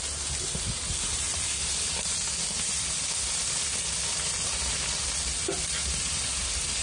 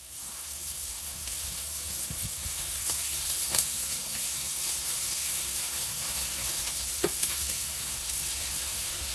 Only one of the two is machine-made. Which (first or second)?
second